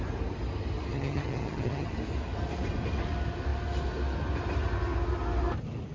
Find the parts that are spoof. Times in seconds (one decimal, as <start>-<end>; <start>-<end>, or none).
0.9-1.9